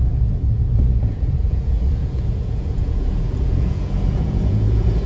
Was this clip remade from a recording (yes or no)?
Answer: yes